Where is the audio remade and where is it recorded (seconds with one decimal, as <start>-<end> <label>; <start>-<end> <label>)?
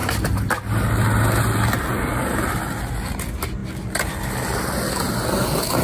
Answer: 0.0-5.8 recorded